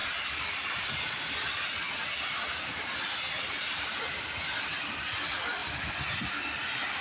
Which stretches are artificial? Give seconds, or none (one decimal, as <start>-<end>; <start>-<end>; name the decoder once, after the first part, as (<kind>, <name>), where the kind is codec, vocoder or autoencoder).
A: none